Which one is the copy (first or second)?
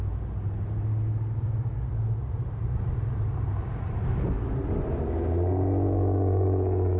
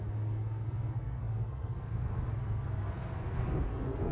second